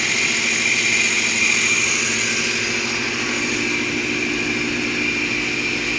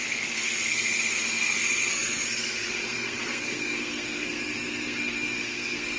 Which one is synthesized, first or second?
second